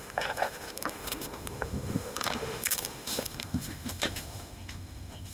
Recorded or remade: remade